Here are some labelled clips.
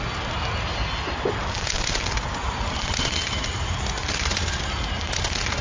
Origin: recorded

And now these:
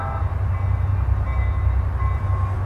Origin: recorded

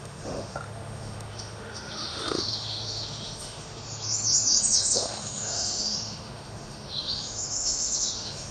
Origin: remade